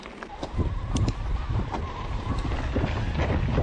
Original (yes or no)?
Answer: yes